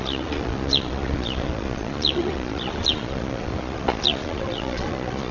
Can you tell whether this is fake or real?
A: fake